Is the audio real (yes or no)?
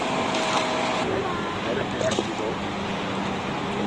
yes